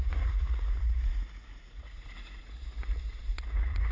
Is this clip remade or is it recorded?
remade